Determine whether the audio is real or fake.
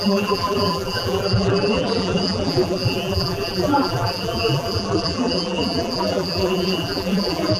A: fake